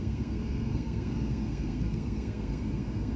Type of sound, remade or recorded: remade